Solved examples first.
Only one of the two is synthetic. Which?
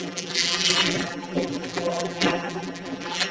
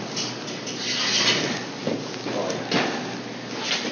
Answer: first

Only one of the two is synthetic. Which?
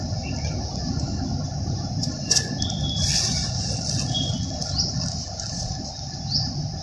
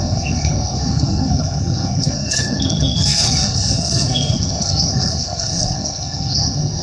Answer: second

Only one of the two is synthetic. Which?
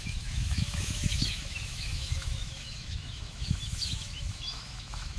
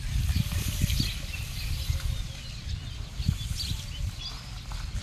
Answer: first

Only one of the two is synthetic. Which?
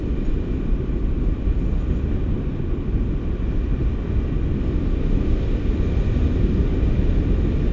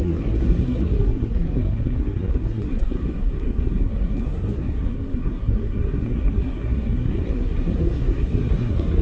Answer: second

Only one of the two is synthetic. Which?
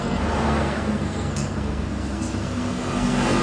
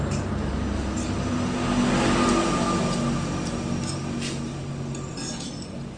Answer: first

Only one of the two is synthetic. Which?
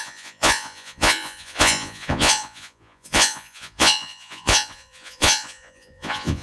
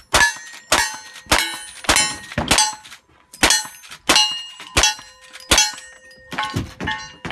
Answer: first